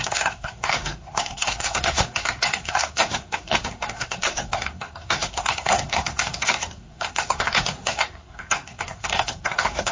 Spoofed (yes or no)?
yes